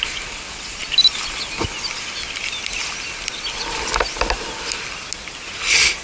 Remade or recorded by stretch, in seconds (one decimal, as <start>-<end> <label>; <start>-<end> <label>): 0.0-6.0 recorded